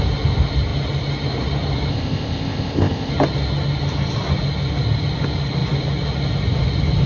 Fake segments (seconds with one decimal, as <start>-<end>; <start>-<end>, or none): 1.9-3.1